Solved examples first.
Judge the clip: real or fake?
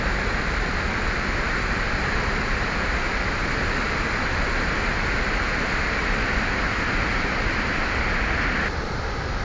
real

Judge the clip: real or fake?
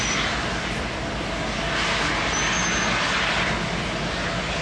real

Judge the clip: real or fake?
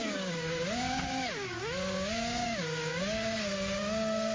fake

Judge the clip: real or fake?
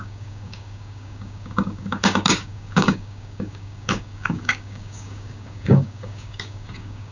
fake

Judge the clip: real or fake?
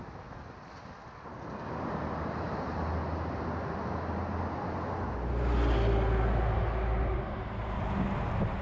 real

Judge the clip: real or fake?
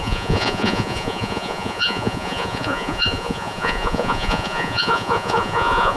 fake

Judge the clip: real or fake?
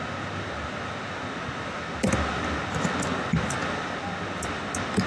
real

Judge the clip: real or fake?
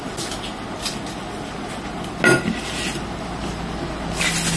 real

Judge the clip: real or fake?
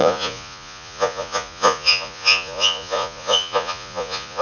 fake